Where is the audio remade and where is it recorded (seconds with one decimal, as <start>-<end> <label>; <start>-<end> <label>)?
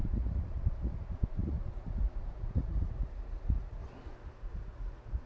0.0-3.8 remade; 3.8-4.3 recorded; 4.3-5.3 remade